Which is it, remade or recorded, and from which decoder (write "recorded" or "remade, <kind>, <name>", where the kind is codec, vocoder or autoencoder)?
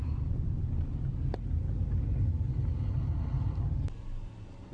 recorded